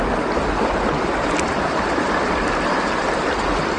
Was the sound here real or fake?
real